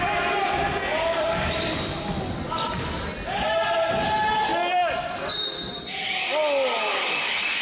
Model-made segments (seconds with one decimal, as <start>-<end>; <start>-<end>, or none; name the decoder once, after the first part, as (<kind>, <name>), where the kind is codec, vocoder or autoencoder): none